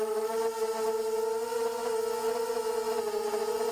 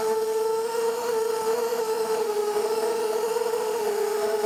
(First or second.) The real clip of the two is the first